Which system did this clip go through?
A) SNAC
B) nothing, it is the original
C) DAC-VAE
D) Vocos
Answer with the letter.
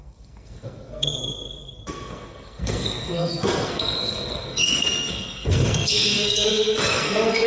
A